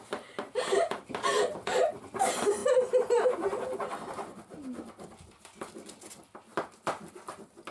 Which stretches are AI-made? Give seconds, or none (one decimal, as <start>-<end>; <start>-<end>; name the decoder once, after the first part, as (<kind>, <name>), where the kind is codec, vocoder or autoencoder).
0.0-2.6 (vocoder, BigVGAN v2); 7.1-7.7